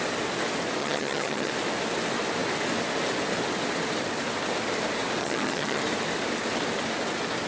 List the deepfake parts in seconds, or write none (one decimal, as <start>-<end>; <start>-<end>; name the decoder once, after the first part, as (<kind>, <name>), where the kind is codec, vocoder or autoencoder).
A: 0.8-1.5 (vocoder, HiFi-GAN); 5.2-5.8